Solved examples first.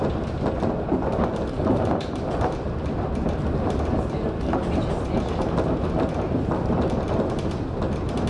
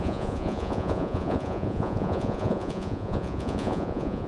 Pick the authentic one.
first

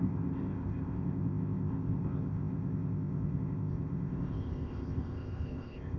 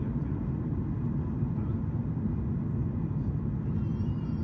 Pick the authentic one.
second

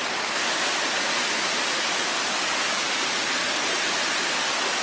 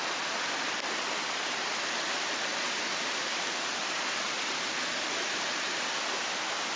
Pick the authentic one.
first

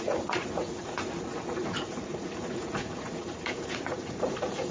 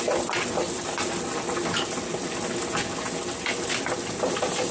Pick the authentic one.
second